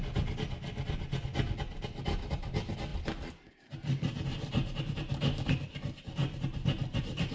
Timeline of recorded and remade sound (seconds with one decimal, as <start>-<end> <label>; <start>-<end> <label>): 0.0-7.3 recorded